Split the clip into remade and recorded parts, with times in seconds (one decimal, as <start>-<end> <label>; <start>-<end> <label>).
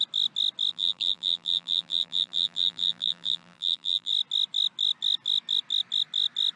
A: 0.0-0.7 recorded; 0.7-4.1 remade; 4.1-6.6 recorded